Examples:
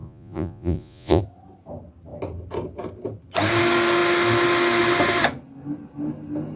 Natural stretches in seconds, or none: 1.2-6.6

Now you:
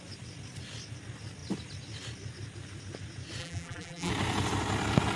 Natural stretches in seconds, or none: 0.0-3.4; 4.1-5.2

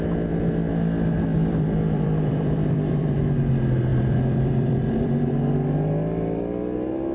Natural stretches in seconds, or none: 0.0-1.3; 3.2-3.9; 5.3-7.1

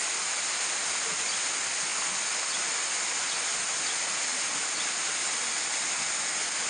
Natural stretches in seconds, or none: 0.0-6.7